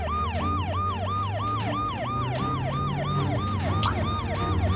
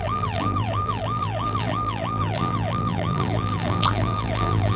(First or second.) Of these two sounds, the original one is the first